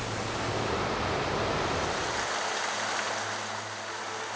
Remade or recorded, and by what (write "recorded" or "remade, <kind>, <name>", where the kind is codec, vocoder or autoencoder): recorded